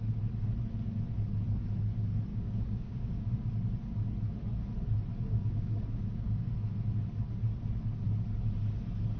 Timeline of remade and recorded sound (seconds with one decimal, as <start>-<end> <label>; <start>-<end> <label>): 0.0-2.3 recorded; 2.3-3.3 remade; 3.3-5.1 recorded; 5.1-6.5 remade; 6.5-9.2 recorded